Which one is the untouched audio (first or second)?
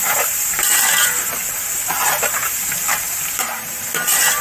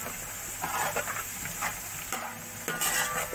second